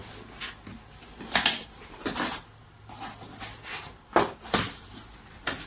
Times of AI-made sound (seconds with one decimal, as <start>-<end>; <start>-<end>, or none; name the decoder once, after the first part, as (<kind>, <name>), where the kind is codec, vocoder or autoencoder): none